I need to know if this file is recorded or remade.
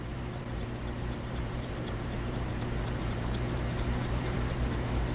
remade